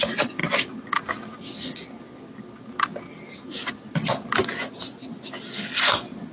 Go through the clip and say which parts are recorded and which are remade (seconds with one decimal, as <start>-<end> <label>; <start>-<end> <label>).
0.0-6.3 recorded